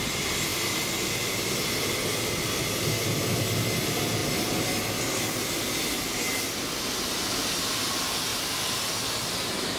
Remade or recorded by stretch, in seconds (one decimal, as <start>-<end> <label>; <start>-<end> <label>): 0.0-9.8 recorded